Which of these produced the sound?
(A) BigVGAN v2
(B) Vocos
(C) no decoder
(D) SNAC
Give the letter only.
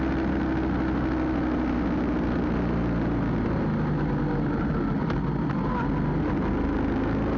C